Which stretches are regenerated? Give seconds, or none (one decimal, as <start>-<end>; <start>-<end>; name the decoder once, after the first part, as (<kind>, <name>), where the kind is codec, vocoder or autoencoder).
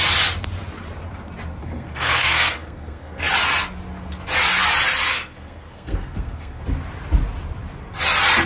1.6-3.2 (codec, SNAC); 5.1-6.6